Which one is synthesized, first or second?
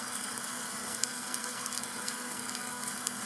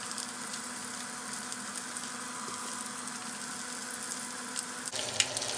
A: first